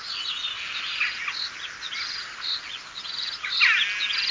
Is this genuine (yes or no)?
yes